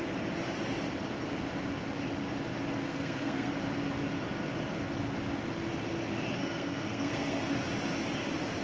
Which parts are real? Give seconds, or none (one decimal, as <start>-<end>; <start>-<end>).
0.0-2.8; 3.5-6.4; 7.5-8.6